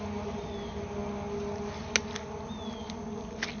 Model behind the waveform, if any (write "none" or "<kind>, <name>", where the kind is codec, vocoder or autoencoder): none